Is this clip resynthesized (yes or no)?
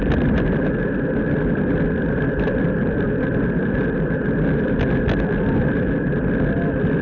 no